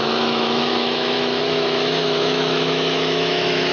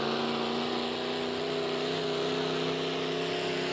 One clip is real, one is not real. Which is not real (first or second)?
first